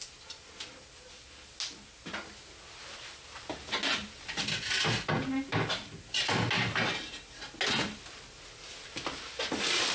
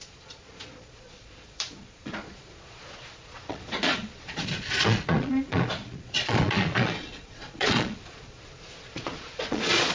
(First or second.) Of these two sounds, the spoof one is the second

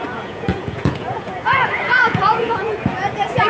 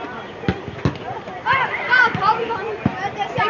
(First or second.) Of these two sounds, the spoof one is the first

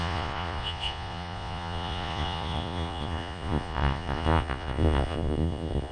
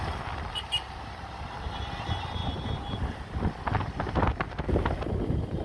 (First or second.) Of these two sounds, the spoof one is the first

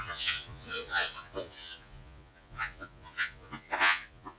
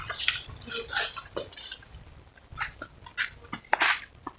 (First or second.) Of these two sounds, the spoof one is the first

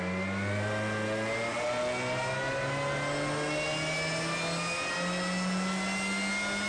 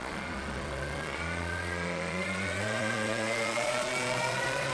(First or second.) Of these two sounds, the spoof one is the second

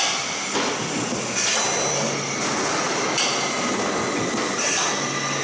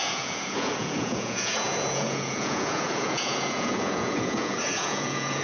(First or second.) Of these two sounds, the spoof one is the second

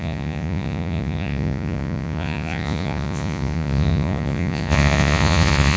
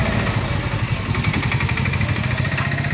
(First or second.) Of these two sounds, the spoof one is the first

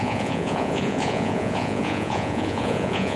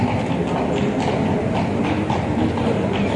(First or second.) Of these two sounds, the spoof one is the first